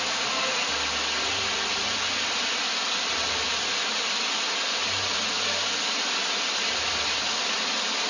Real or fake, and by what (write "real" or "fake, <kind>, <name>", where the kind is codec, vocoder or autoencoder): real